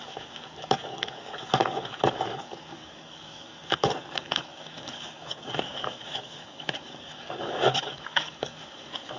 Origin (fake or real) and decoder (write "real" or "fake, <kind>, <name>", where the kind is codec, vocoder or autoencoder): fake, codec, DAC